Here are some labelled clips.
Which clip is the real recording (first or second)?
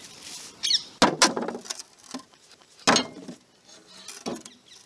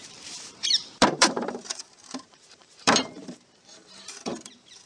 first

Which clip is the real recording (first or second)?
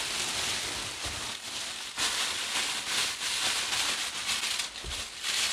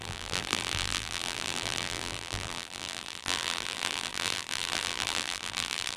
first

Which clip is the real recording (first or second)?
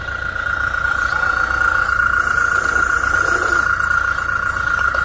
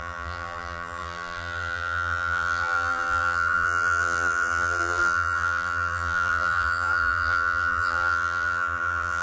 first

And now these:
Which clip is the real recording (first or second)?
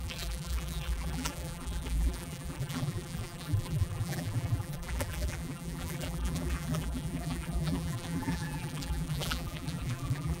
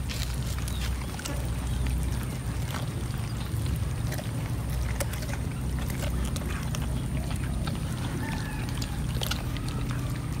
second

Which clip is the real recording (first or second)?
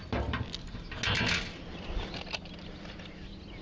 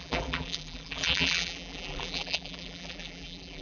first